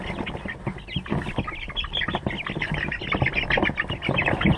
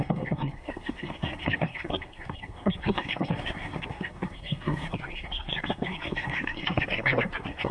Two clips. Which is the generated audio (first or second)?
second